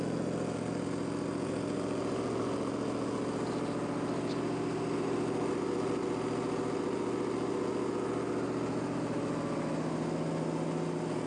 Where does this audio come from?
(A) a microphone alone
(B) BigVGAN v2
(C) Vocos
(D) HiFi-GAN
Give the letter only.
A